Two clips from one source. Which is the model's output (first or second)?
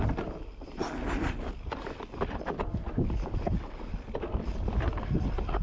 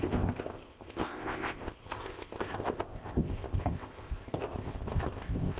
second